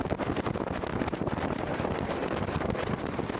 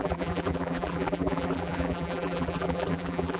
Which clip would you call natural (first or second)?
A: first